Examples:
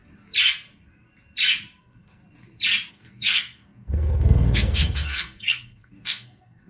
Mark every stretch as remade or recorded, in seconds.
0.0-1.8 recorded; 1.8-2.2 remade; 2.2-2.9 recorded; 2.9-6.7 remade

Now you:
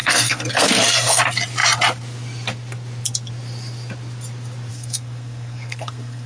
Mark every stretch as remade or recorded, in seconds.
0.0-1.2 remade; 1.2-4.7 recorded; 4.7-6.3 remade

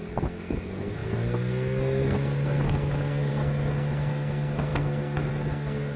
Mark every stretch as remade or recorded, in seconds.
0.0-6.0 remade